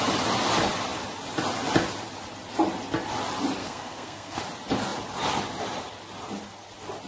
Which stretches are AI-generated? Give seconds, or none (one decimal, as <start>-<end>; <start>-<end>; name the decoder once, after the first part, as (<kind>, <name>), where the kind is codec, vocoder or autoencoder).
3.6-4.4 (codec, SNAC)